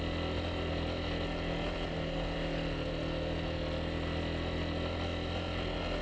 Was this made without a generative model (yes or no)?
yes